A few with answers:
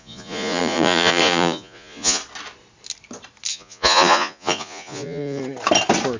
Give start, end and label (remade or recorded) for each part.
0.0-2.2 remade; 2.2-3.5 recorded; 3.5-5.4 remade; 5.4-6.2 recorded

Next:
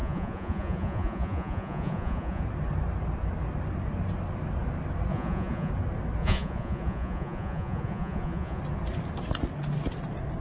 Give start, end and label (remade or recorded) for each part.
0.0-2.4 remade; 2.4-5.1 recorded; 5.1-5.7 remade; 5.7-6.2 recorded; 6.2-8.6 remade; 8.6-10.4 recorded